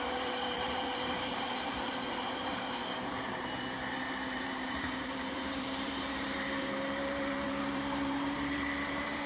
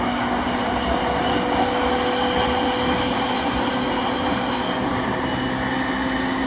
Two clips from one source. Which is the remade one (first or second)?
first